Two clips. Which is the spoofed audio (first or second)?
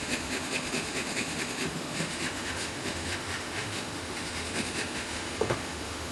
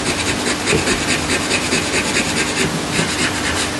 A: first